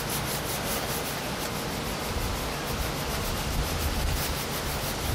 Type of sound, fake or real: real